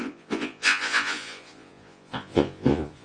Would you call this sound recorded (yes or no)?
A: no